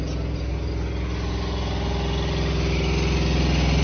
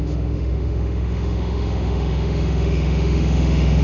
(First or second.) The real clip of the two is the first